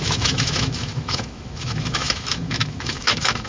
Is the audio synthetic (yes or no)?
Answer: yes